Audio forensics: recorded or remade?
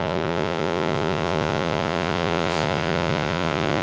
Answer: remade